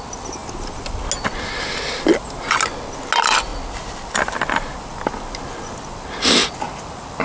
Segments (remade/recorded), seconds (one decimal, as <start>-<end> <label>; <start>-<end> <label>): 0.0-7.2 recorded